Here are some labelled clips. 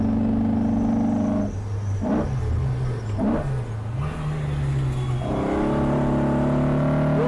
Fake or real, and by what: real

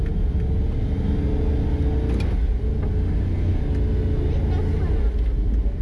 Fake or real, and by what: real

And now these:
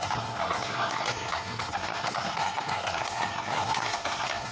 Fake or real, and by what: fake, codec, SNAC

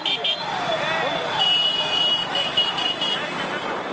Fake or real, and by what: real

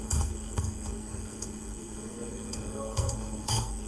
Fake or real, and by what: fake, codec, SNAC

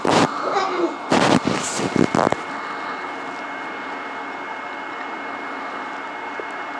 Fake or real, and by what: real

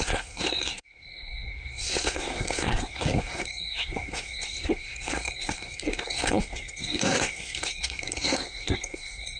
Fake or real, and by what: fake, codec, SNAC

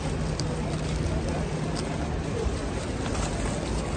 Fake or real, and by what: real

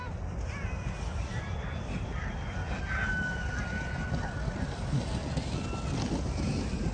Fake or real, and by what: real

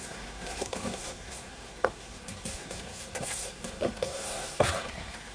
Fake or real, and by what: fake, codec, SNAC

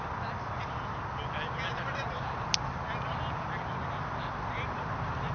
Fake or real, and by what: real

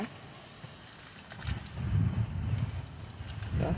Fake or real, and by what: real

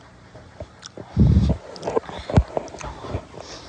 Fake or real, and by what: real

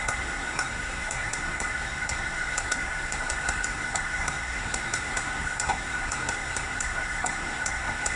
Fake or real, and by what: fake, codec, SNAC